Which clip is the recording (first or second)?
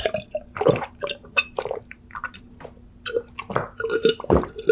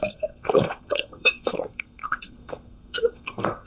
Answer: first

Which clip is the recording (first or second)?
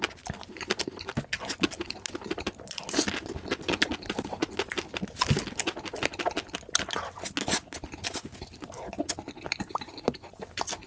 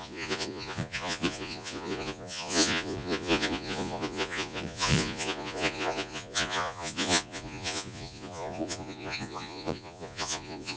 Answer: first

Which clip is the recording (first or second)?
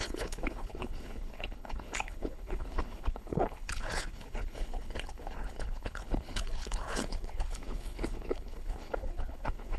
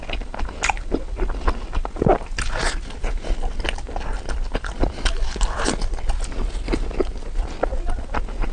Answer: second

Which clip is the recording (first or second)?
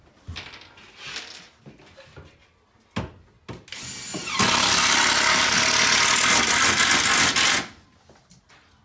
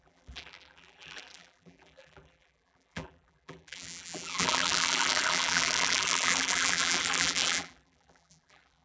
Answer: first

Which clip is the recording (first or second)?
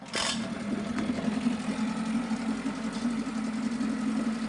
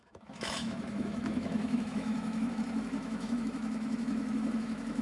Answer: first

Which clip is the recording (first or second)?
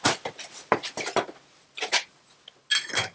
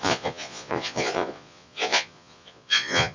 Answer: first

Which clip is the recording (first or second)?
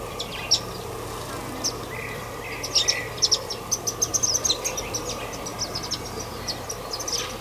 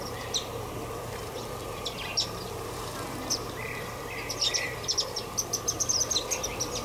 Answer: first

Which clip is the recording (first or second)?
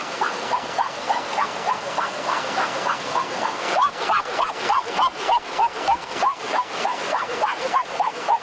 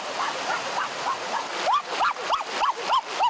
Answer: second